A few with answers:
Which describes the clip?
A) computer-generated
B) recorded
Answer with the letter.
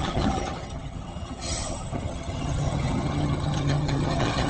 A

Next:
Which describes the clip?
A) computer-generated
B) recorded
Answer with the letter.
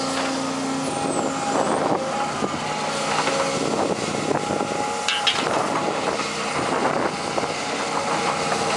B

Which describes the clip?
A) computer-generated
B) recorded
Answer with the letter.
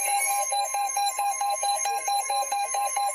A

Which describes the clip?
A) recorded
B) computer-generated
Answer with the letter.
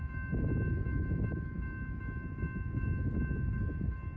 A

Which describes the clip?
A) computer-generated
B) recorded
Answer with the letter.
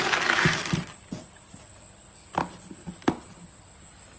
B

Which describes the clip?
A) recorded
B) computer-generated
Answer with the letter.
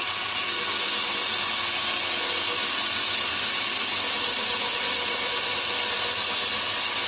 A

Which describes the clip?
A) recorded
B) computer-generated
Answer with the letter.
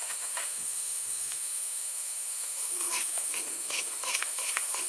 B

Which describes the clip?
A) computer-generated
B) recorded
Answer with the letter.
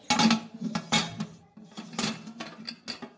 B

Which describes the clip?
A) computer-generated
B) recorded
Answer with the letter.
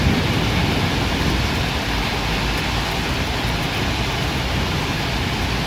B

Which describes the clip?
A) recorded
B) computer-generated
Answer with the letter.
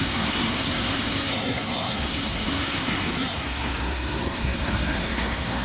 B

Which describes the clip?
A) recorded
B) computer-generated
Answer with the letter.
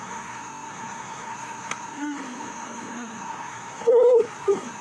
B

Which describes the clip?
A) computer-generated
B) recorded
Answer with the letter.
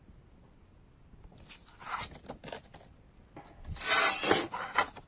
B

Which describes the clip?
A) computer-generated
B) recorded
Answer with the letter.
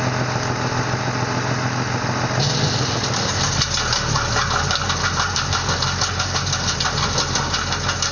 B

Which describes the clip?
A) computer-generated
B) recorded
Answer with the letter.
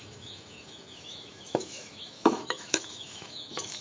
A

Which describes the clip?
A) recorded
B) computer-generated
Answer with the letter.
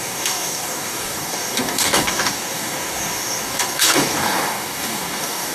B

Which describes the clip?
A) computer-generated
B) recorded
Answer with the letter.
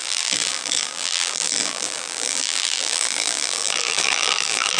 A